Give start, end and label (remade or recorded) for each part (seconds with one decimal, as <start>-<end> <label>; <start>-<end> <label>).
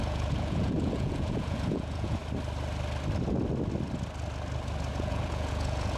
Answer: 0.0-2.2 remade; 2.2-4.9 recorded; 4.9-6.0 remade